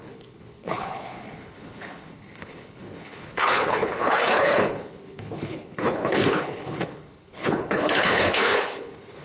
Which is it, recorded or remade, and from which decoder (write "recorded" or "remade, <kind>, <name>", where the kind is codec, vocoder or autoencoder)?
remade, codec, HILCodec